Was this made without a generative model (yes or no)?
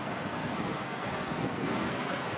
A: no